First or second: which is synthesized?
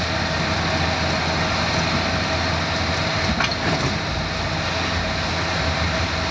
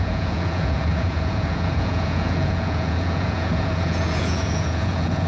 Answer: second